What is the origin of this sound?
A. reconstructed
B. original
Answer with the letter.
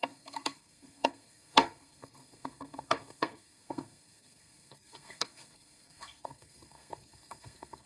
A